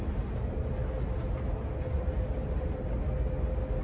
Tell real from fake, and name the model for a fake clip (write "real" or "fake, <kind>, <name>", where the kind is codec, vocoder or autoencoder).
real